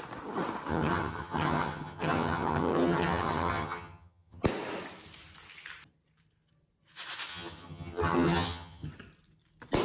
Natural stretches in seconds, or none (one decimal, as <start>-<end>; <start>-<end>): 0.0-0.7; 4.4-7.3; 8.9-9.8

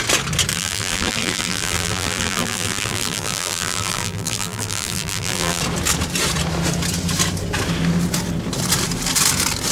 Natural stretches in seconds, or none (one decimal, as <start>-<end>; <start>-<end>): 0.0-0.5; 5.6-9.7

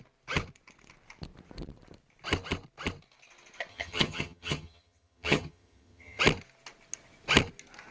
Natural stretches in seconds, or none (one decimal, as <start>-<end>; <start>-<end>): 0.0-3.7; 6.2-7.9

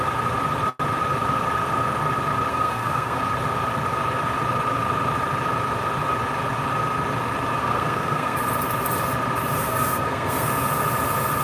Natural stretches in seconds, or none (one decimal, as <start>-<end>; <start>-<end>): 0.0-2.5; 3.2-7.6; 8.4-9.6; 10.5-11.4